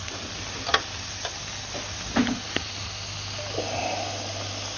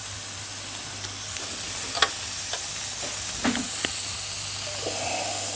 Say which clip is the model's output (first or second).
first